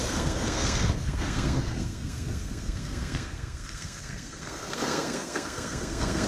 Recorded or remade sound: remade